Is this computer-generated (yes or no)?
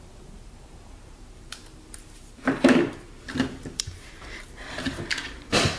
yes